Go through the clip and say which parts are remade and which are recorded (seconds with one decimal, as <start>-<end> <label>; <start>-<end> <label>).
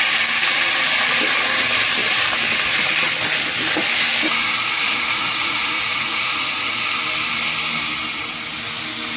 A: 0.0-4.4 recorded; 4.4-6.9 remade; 6.9-9.2 recorded